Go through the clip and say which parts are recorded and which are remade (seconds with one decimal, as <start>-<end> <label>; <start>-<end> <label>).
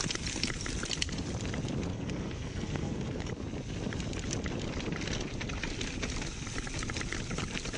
0.0-1.9 recorded; 1.9-3.3 remade; 3.3-7.8 recorded